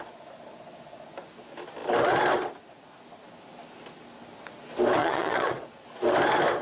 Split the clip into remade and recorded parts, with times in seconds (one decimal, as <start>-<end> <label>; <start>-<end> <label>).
0.0-5.0 recorded; 5.0-5.7 remade; 5.7-6.6 recorded